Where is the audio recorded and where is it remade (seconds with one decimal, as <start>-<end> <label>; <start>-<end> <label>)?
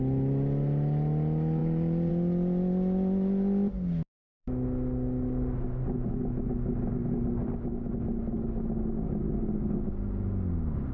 0.0-10.9 recorded